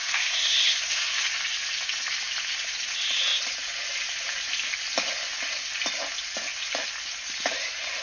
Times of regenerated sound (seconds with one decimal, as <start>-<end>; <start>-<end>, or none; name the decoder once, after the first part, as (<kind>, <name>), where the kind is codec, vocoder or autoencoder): 0.0-1.1 (codec, SNAC)